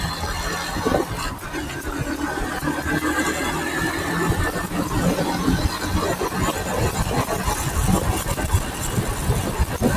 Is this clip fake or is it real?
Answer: real